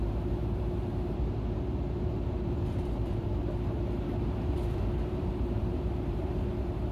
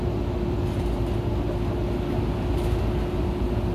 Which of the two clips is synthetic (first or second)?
first